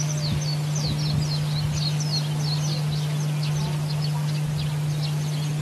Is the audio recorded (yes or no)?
yes